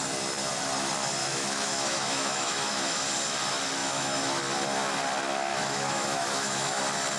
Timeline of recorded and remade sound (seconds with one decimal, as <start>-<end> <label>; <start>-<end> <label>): 0.0-1.2 recorded; 1.2-3.0 remade; 3.0-3.8 recorded; 3.8-4.4 remade; 4.4-5.5 recorded; 5.5-6.8 remade; 6.8-7.2 recorded